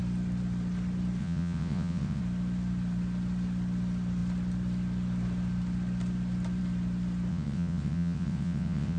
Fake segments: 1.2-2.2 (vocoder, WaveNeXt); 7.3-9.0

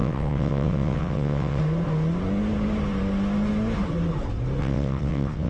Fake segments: 0.0-1.6 (vocoder, WaveNeXt); 4.6-5.5

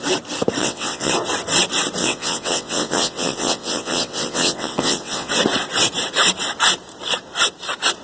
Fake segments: 0.6-1.1 (vocoder, WaveNeXt); 2.0-5.3